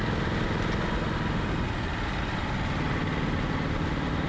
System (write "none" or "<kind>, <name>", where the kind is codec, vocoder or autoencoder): none